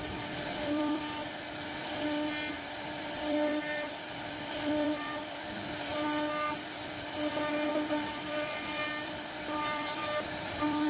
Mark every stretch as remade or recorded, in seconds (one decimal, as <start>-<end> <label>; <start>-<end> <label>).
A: 0.0-1.2 remade; 1.2-2.5 recorded; 2.5-5.9 remade; 5.9-7.7 recorded; 7.7-8.8 remade; 8.8-9.3 recorded; 9.3-10.9 remade